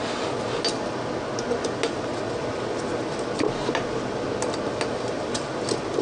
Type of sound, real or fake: real